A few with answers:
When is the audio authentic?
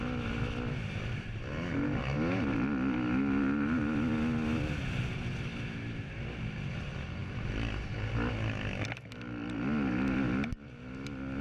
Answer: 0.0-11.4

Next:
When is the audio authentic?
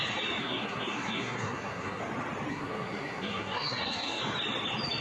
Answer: 0.0-0.4; 2.0-2.5; 4.2-5.0